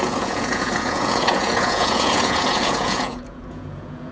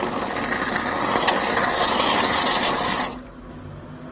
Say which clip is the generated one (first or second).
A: first